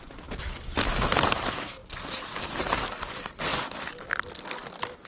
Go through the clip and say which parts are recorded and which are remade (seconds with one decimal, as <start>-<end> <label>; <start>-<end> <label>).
0.0-1.8 remade; 1.8-3.1 recorded; 3.1-5.1 remade